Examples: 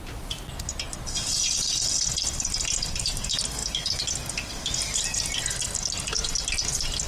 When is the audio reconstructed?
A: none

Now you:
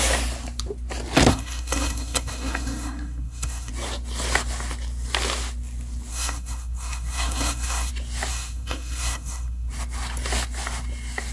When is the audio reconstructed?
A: 1.3-3.7 (codec, SNAC); 6.1-7.9; 8.3-9.7

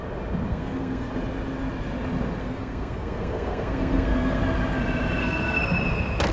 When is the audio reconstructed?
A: 0.5-1.1 (codec, SNAC); 2.4-4.4; 5.2-5.8